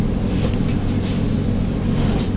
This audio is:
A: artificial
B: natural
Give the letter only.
B